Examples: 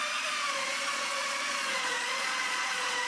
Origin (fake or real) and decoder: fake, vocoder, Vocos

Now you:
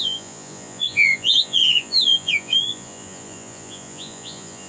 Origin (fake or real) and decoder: fake, vocoder, Vocos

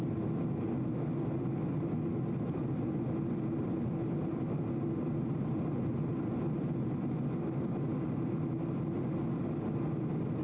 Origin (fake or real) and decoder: real